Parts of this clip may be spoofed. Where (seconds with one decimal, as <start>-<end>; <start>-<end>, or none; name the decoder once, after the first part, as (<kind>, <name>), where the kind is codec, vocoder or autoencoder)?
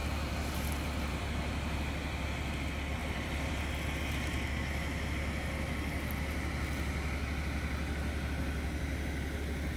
0.0-0.7 (vocoder, BigVGAN v2); 1.1-1.8; 3.0-3.5